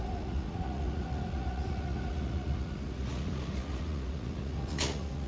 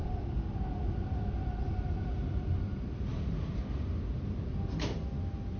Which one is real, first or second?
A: second